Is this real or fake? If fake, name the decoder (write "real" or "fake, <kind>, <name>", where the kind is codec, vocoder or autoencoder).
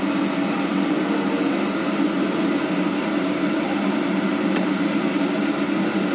real